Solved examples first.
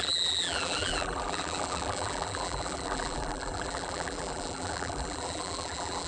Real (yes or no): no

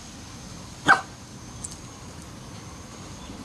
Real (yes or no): yes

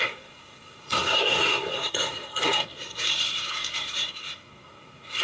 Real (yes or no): no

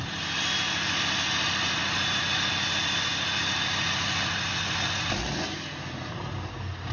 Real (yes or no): yes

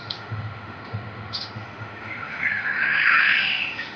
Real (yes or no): no